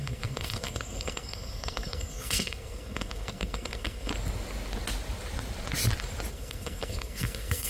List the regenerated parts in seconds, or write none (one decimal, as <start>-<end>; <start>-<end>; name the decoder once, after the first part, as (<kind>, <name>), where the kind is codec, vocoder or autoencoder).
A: 0.0-4.1 (codec, SNAC); 6.3-7.7